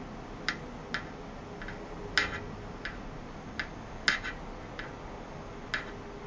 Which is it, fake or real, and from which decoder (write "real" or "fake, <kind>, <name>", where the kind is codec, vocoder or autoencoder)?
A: real